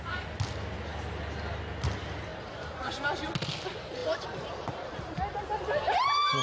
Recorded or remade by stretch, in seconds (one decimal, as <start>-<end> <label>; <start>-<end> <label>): 0.0-2.3 recorded; 2.3-2.9 remade; 2.9-4.0 recorded; 4.0-5.4 remade; 5.4-6.4 recorded